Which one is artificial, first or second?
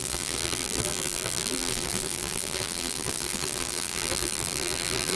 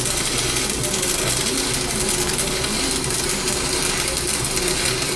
first